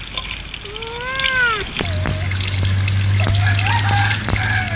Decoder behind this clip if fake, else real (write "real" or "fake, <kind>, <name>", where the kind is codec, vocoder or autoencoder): real